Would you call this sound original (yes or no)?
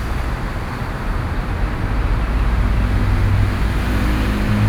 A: yes